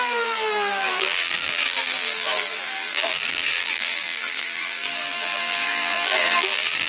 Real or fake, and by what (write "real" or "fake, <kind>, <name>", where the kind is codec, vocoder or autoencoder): fake, vocoder, BigVGAN v2